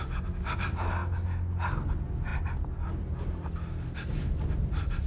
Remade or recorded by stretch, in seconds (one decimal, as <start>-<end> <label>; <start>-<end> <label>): 0.0-5.1 recorded